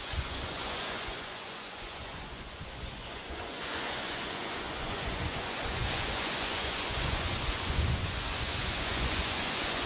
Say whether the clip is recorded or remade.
remade